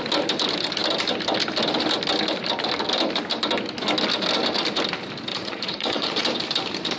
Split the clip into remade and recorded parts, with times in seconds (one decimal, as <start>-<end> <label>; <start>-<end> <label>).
0.0-5.3 recorded; 5.3-6.2 remade; 6.2-7.0 recorded